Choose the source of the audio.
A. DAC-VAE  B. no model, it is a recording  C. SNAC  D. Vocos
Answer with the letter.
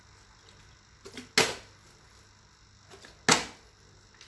B